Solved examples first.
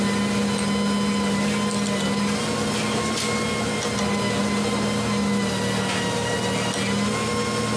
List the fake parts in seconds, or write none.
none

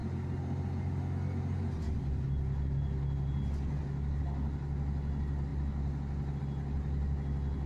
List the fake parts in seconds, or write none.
none